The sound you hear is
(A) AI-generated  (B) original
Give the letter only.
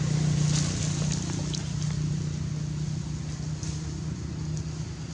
B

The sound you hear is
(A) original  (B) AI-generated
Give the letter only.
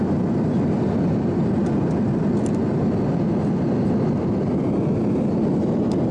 A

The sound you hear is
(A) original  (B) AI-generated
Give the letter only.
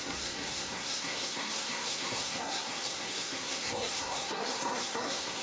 B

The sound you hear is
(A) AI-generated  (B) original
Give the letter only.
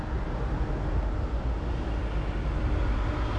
B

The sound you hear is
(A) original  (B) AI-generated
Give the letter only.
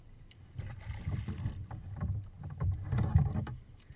A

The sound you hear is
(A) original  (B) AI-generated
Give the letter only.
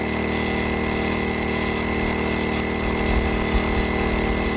A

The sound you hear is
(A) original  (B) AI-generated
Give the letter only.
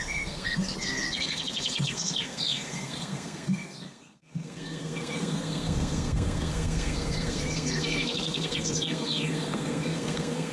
B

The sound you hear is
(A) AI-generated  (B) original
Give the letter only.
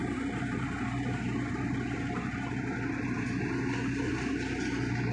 B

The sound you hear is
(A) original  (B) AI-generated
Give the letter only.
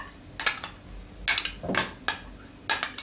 A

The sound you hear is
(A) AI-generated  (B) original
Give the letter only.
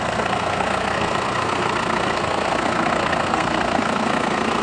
A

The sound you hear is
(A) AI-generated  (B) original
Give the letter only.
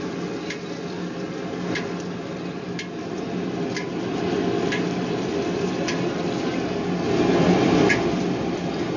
B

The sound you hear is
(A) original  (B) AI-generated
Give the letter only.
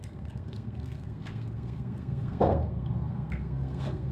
B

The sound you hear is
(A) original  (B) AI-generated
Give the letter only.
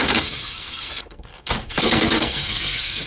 B